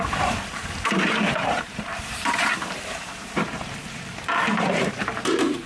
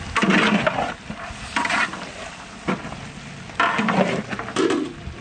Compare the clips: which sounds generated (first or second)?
first